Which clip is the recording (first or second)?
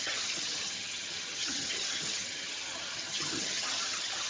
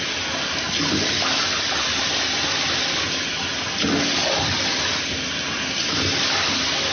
second